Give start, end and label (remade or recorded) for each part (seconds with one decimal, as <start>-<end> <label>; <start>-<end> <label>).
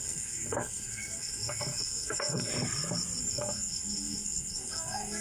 0.0-2.5 remade; 2.5-3.2 recorded; 3.2-5.2 remade